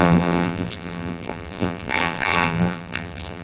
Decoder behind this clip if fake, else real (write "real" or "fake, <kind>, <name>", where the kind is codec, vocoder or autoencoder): fake, vocoder, BigVGAN v2